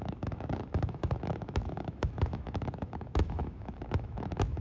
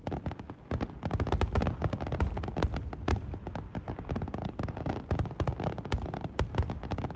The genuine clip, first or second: second